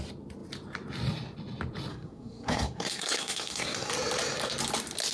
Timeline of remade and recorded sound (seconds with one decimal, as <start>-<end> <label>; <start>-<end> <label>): 0.0-1.9 recorded; 1.9-3.9 remade; 3.9-5.1 recorded